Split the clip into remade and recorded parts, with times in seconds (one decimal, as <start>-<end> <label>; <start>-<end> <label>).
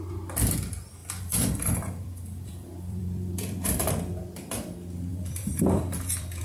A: 0.0-1.0 recorded; 1.0-3.9 remade; 3.9-5.1 recorded; 5.1-6.4 remade